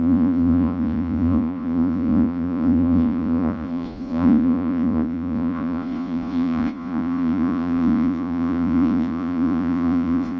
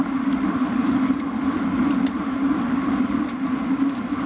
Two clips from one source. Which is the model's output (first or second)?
first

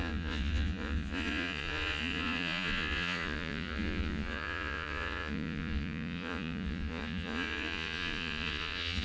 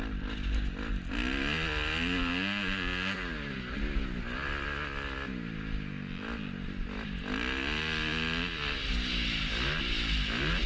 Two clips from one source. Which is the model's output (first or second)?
first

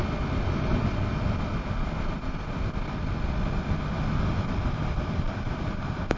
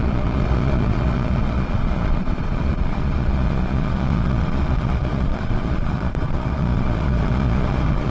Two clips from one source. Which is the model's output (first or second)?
second